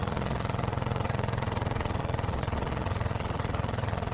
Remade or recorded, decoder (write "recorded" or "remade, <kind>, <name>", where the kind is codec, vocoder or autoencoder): remade, vocoder, Vocos